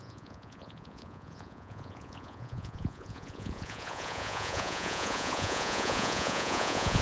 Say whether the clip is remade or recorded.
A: remade